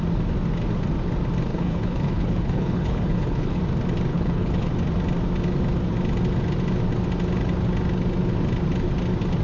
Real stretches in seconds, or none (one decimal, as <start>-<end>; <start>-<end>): 0.0-1.5; 3.6-4.1; 4.7-9.4